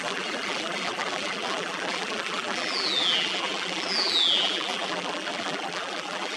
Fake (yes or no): yes